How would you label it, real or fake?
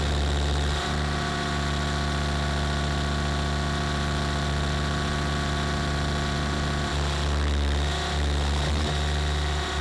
real